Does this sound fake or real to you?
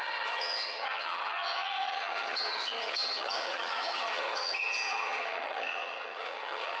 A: fake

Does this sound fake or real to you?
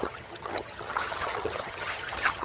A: fake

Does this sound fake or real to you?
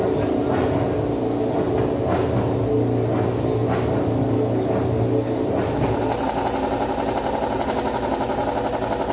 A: real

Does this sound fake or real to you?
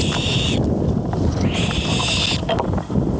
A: real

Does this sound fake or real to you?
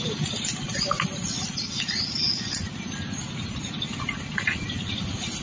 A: real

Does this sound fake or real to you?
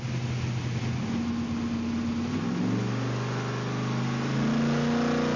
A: real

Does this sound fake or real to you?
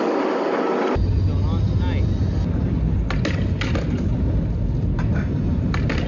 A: real